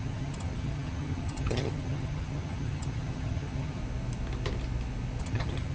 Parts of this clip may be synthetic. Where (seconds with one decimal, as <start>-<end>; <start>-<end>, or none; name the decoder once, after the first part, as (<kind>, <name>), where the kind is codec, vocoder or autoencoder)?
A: 0.0-3.8 (vocoder, HiFi-GAN); 5.2-5.7